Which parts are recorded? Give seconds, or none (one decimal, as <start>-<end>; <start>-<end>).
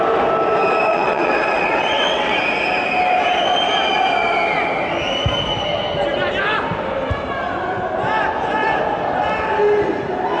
0.0-0.9; 2.3-10.4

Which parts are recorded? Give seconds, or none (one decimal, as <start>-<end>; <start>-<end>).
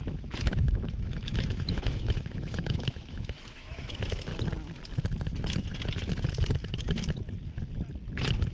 4.3-8.5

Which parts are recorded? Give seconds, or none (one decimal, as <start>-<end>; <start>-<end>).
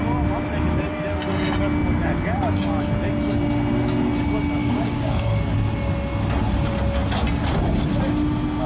0.0-4.6; 5.4-8.7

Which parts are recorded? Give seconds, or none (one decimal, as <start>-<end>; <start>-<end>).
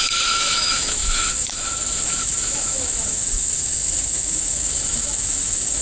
none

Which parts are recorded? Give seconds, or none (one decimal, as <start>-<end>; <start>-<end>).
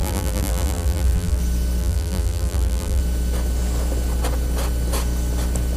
1.4-1.8; 3.0-5.8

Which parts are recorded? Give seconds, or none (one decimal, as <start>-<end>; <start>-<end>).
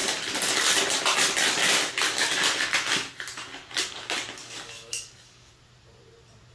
0.0-4.4; 5.5-6.5